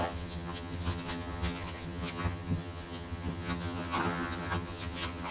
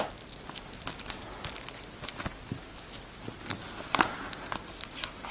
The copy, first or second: first